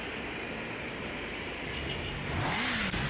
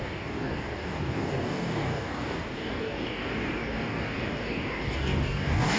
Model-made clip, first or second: second